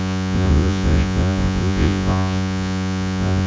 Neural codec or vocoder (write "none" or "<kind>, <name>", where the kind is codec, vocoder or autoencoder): vocoder, Vocos